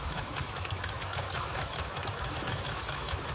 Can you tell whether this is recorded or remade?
remade